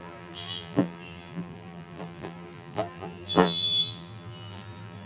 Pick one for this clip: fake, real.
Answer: fake